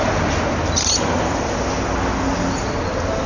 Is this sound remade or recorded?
recorded